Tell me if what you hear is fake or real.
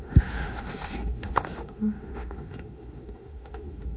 fake